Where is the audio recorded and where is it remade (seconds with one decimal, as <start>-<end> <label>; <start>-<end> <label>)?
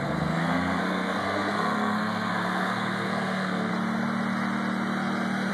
0.0-3.7 remade; 3.7-5.5 recorded